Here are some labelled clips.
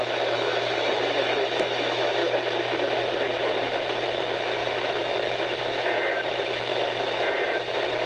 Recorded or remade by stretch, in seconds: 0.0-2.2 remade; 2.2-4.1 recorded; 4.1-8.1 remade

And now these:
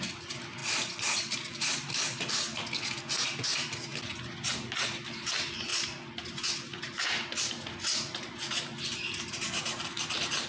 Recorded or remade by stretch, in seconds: 0.0-10.5 recorded

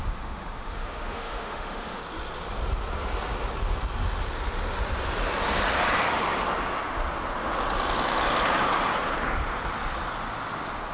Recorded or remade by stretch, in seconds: 0.0-2.0 remade; 2.0-10.9 recorded

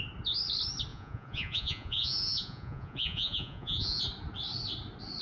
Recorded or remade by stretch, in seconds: 0.0-0.9 recorded; 0.9-4.0 remade; 4.0-5.2 recorded

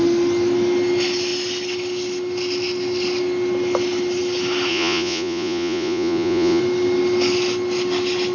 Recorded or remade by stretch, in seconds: 0.0-4.7 recorded; 4.7-6.6 remade; 6.6-8.3 recorded